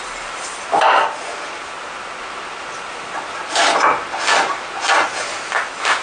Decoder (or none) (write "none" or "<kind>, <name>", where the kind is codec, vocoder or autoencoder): none